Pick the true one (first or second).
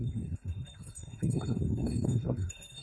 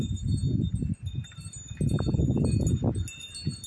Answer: second